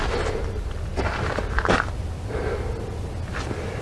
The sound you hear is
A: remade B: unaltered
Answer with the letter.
B